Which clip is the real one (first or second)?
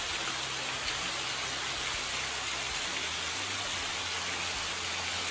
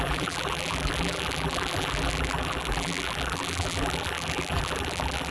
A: first